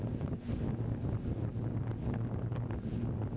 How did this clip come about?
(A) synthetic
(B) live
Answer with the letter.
B